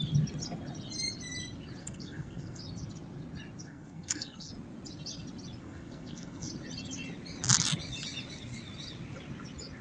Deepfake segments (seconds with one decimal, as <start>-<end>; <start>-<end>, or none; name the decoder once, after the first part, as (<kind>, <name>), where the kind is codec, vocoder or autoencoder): 1.8-2.6 (codec, SNAC); 3.6-4.5; 5.6-6.5